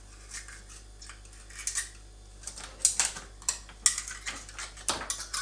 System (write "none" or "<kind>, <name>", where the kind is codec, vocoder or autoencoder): none